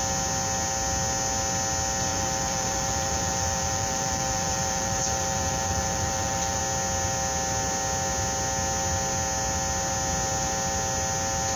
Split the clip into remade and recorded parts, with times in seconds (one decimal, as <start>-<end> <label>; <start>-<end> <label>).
0.0-2.1 recorded; 2.1-6.6 remade; 6.6-11.6 recorded